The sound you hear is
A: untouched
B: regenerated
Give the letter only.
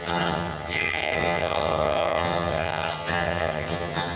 B